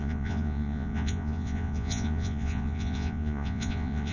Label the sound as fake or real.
fake